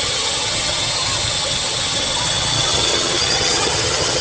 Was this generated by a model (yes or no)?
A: yes